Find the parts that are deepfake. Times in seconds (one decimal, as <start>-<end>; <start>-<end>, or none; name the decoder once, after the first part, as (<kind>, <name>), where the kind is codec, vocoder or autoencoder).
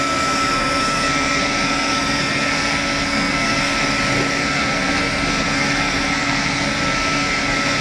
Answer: 0.0-3.7 (codec, SNAC); 4.3-7.8